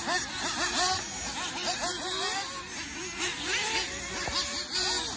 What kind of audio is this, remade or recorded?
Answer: recorded